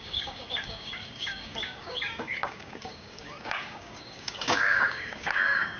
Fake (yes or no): yes